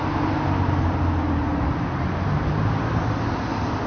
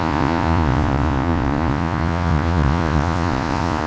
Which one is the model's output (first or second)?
second